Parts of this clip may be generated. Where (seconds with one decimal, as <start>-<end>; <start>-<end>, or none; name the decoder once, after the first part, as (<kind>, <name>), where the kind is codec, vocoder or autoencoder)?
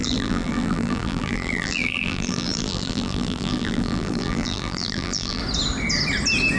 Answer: 0.0-5.4 (vocoder, BigVGAN v2)